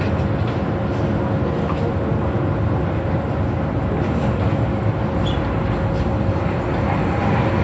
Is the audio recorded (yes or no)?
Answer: yes